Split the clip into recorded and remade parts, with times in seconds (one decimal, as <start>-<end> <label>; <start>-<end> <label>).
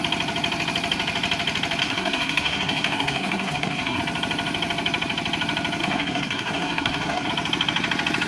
0.0-1.8 recorded; 1.8-4.0 remade; 4.0-5.8 recorded; 5.8-7.3 remade; 7.3-8.3 recorded